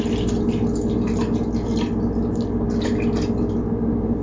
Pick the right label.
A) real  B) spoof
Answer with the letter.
A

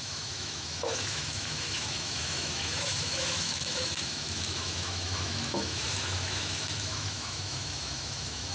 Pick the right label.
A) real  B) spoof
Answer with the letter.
B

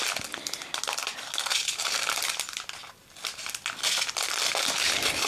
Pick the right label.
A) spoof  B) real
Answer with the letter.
B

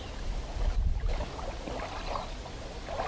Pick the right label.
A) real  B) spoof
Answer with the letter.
A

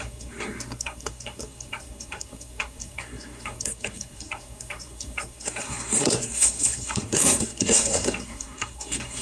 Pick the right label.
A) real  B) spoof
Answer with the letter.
B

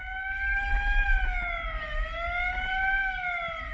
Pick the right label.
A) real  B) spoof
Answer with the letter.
A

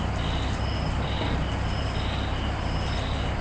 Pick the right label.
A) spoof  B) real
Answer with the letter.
B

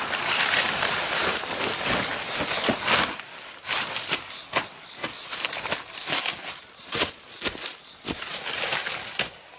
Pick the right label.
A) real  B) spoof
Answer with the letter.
A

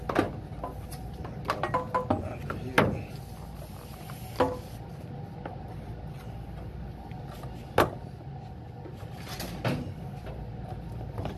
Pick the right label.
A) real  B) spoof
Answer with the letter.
A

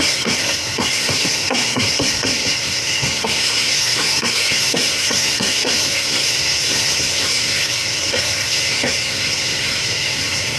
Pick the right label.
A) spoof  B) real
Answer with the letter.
A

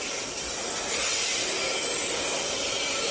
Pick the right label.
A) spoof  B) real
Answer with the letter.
B